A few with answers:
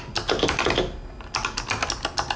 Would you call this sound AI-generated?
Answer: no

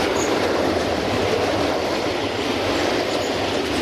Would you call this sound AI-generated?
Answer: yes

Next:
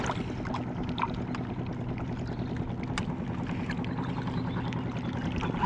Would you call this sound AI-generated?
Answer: no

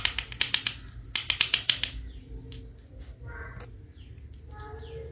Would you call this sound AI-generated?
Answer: no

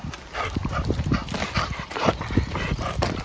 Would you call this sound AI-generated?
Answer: yes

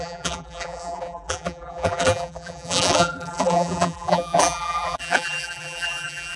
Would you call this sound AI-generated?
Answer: yes